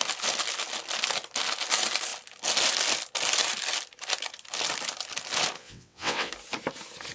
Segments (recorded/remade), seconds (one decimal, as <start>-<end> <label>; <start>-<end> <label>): 0.0-5.6 recorded; 5.6-6.3 remade; 6.3-7.1 recorded